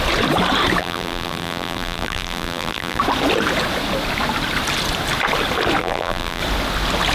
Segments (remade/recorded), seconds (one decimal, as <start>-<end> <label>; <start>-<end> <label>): 0.0-0.8 recorded; 0.8-3.0 remade; 3.0-5.8 recorded; 5.8-6.4 remade; 6.4-7.1 recorded